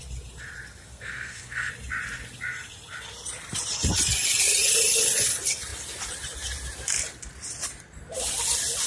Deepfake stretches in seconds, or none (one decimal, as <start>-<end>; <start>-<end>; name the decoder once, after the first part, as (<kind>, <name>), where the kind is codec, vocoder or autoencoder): 0.8-1.7 (codec, SNAC)